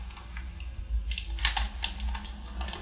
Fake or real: real